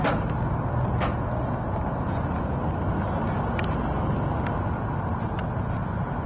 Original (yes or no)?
yes